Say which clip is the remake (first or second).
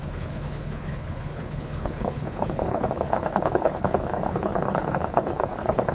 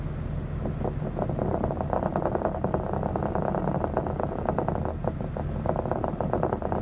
first